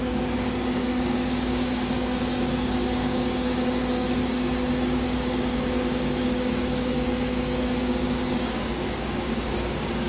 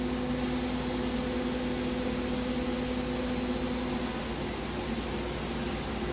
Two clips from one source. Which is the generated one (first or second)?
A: first